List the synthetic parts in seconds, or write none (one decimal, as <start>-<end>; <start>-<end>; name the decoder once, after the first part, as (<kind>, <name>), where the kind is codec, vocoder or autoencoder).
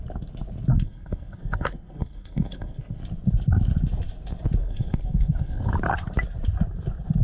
0.7-3.0 (codec, SNAC); 4.6-5.7